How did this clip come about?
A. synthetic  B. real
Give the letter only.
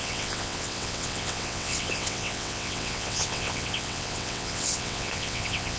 A